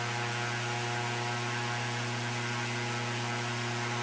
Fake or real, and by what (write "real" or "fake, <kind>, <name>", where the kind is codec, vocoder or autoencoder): real